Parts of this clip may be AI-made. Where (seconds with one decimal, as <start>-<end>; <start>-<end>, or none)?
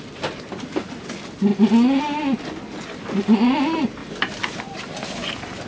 4.0-5.7